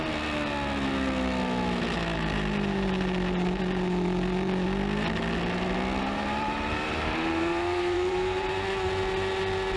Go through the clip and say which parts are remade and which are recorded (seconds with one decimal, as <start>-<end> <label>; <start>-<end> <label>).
0.0-6.0 recorded; 6.0-8.5 remade; 8.5-9.8 recorded